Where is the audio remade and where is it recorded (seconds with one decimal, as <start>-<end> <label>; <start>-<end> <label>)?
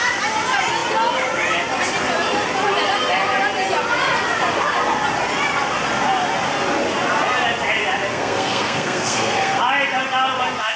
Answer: 0.0-8.1 recorded; 8.1-9.6 remade; 9.6-10.8 recorded